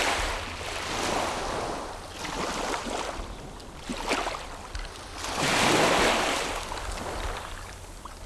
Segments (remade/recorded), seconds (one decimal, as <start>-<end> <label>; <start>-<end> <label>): 0.0-8.3 recorded